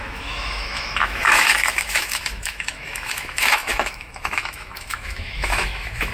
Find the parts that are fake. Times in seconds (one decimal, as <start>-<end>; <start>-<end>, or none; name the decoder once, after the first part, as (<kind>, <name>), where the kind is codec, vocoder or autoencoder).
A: 0.0-6.1 (autoencoder, DAC-VAE)